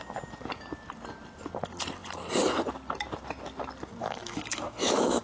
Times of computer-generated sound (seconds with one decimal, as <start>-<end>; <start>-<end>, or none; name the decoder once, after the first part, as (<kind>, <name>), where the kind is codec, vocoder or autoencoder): 4.0-5.2 (autoencoder, DAC-VAE)